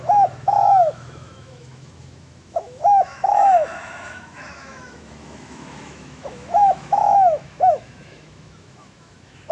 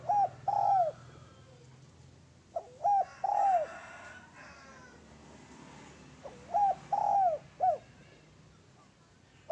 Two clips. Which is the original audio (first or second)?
second